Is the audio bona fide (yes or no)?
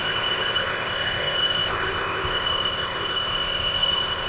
no